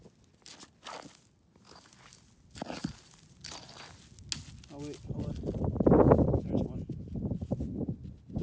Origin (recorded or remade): recorded